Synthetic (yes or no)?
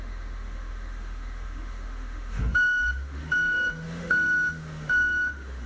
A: yes